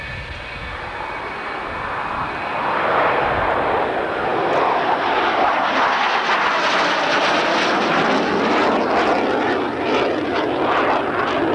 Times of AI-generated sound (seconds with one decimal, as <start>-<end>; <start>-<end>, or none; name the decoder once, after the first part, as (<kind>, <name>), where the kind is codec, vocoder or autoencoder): none